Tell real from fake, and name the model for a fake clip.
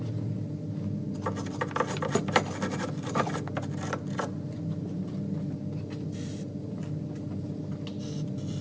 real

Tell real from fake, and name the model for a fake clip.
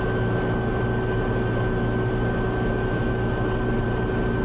real